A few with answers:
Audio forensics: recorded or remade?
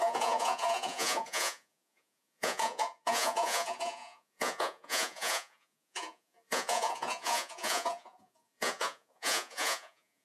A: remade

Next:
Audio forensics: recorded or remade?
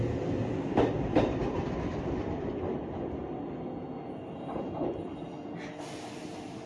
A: recorded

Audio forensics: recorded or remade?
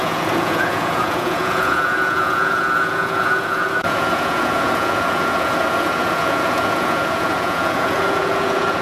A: remade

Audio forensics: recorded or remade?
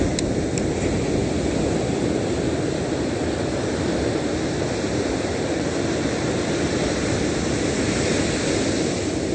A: recorded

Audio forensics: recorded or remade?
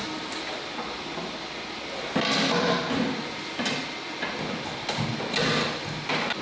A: recorded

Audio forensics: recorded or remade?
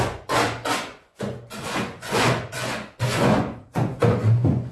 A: remade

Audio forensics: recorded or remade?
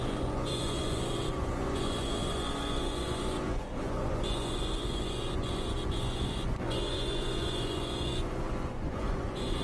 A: remade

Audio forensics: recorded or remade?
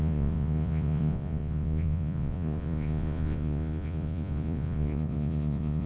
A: remade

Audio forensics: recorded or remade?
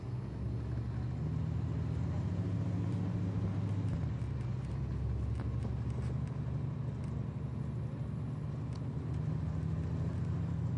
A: recorded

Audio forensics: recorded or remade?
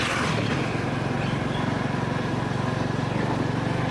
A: recorded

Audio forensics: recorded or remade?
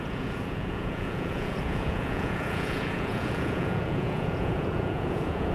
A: remade